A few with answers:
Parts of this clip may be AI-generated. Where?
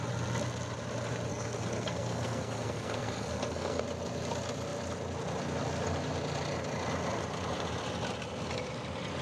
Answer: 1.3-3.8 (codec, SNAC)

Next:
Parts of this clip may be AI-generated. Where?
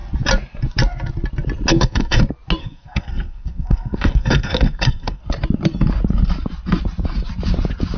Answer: 1.7-2.2 (codec, SNAC); 2.6-5.2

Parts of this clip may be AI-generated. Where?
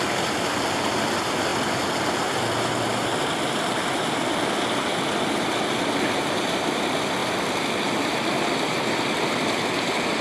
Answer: none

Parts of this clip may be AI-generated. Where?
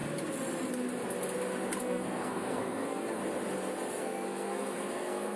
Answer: 1.8-3.2 (codec, SNAC); 4.0-5.4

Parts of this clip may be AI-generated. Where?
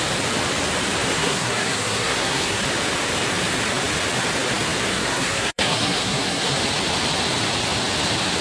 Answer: 1.1-2.6 (codec, SNAC); 4.9-6.6